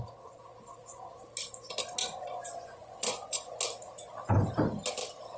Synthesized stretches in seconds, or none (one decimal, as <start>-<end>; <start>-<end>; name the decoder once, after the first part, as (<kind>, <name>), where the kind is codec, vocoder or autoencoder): 2.0-3.6 (vocoder, Vocos)